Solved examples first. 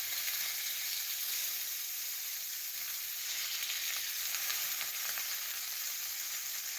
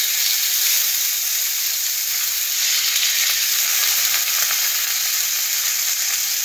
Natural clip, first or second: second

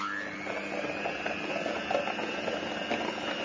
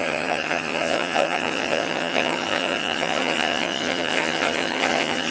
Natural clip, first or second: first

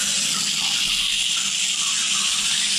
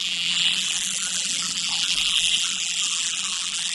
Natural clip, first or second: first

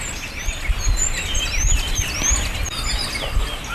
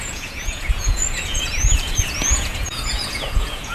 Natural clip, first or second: first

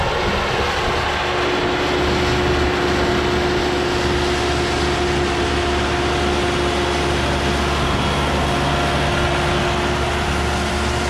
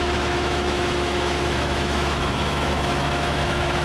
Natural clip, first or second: first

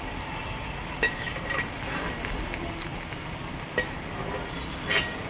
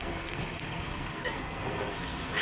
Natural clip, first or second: first